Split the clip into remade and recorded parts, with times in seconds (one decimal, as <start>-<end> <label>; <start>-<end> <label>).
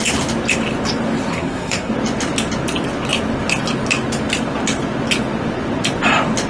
0.0-1.3 recorded; 1.3-1.9 remade; 1.9-6.5 recorded